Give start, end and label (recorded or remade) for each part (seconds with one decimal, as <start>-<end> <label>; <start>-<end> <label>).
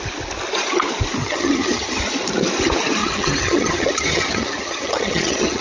0.0-1.2 recorded; 1.2-2.0 remade; 2.0-3.0 recorded; 3.0-5.6 remade